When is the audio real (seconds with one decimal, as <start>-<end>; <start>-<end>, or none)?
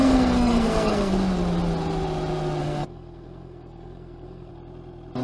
1.1-2.6; 4.5-5.2